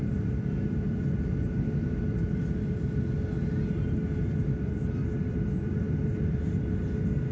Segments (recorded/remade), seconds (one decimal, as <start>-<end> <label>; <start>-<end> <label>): 0.0-7.3 recorded